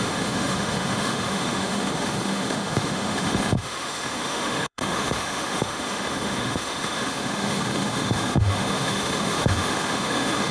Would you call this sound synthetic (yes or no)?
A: yes